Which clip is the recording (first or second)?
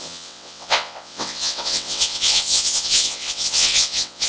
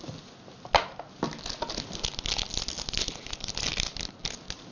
second